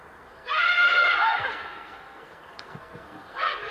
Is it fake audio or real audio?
fake